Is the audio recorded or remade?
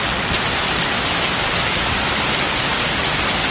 remade